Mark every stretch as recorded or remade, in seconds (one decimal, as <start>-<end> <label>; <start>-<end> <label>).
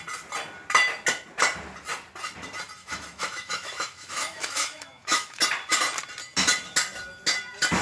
0.0-2.8 recorded; 2.8-5.4 remade; 5.4-7.8 recorded